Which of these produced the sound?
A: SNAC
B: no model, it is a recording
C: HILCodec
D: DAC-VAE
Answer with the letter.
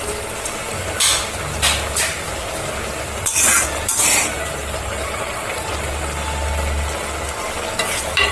B